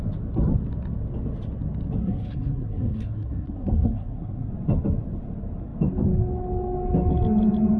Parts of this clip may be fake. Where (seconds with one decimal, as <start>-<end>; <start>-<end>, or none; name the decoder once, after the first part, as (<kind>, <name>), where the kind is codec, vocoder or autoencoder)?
2.0-4.5 (codec, SNAC)